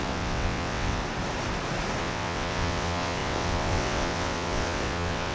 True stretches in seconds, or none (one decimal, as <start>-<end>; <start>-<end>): 1.0-2.0